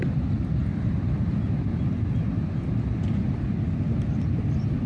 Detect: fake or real real